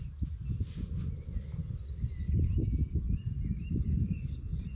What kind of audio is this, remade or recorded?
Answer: recorded